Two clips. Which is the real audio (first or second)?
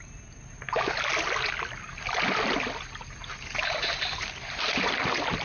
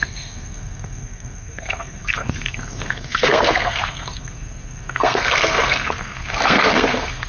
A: first